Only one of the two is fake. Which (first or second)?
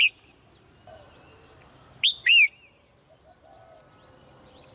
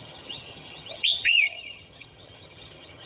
second